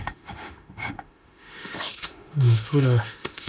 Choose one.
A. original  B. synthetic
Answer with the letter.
B